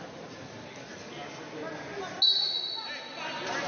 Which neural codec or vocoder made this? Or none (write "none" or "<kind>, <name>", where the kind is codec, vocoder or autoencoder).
none